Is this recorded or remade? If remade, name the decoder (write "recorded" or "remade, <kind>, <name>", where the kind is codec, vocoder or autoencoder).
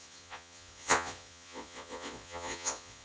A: remade, vocoder, Vocos